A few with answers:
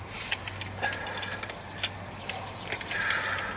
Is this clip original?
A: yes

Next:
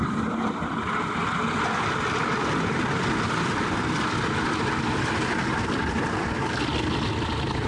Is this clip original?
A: yes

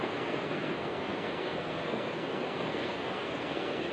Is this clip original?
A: no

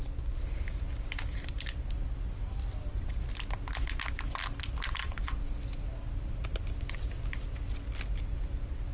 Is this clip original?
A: yes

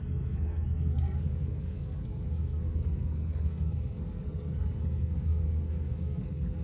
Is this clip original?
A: no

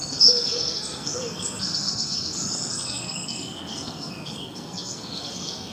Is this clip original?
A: no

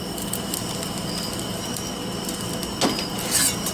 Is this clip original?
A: yes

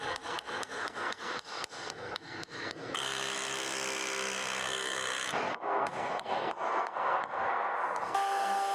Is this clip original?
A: no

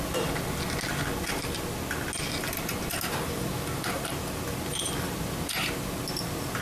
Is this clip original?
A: yes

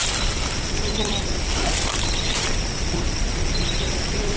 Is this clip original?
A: yes